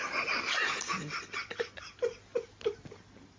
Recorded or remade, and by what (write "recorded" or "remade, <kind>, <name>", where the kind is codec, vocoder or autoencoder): recorded